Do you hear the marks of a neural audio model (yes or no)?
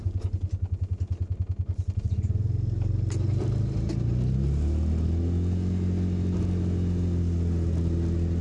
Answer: no